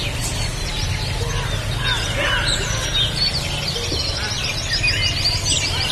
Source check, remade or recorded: recorded